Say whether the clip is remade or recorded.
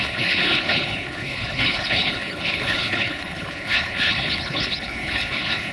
remade